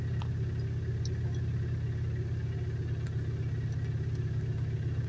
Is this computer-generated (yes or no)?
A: no